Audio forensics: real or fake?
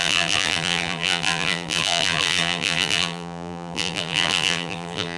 fake